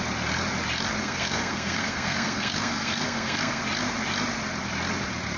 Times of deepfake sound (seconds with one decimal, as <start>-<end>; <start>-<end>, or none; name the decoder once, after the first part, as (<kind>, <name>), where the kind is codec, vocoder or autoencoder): 1.0-3.6 (codec, SNAC)